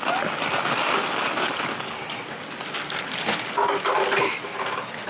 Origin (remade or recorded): recorded